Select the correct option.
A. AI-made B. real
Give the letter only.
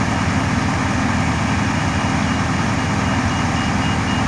B